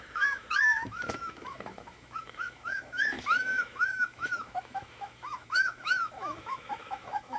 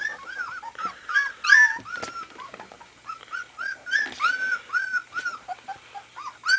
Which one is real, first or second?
second